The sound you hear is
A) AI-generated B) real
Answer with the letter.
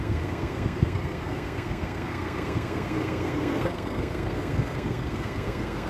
A